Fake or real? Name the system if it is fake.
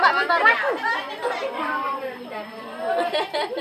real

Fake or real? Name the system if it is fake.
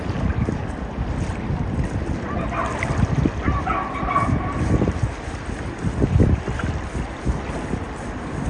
real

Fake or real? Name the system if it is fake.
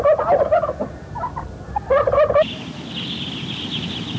real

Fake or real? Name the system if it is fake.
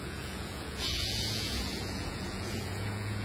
fake, vocoder, Vocos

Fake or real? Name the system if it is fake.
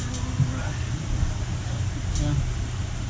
real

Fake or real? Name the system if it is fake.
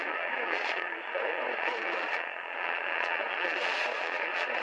fake, vocoder, Vocos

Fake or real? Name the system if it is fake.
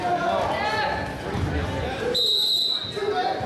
real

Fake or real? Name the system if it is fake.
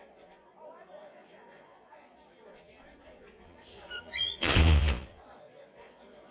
fake, vocoder, Vocos